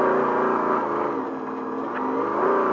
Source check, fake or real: real